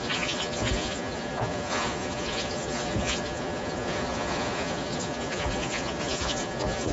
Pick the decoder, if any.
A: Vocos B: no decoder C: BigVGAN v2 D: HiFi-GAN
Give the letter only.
A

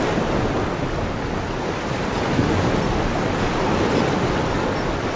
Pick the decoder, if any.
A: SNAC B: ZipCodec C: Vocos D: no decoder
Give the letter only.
D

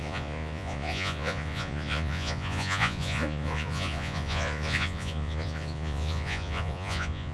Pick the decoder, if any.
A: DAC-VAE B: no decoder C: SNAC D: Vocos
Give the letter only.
D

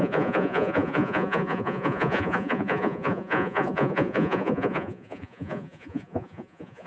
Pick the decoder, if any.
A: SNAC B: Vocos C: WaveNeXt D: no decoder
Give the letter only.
B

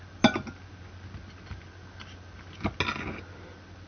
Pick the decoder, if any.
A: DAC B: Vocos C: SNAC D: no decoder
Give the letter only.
D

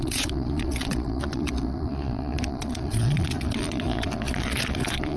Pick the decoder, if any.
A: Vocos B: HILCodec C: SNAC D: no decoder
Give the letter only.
A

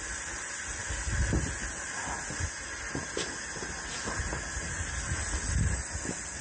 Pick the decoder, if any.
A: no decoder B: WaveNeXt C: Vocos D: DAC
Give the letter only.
A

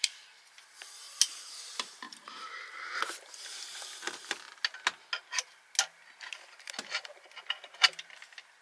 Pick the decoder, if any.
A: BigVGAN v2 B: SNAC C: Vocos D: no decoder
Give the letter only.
D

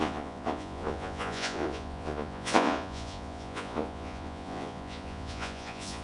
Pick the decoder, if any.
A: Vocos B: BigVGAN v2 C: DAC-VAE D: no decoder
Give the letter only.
A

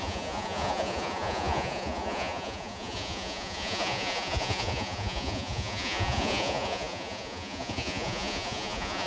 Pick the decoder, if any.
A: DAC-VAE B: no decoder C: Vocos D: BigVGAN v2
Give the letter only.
C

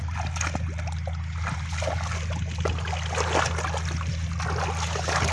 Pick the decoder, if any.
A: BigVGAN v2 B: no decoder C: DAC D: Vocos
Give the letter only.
B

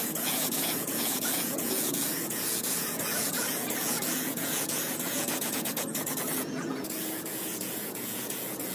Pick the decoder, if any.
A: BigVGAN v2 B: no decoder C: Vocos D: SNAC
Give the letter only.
C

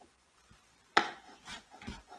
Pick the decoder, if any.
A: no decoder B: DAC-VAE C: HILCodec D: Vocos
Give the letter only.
D